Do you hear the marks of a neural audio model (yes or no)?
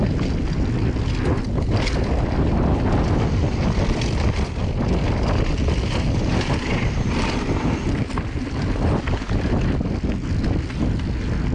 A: no